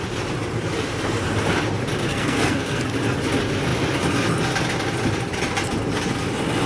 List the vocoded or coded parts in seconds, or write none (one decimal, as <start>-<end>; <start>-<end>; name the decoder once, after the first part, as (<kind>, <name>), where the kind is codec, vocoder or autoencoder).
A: 2.1-2.8 (codec, SNAC)